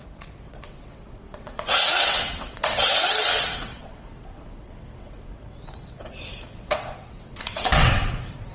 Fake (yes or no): yes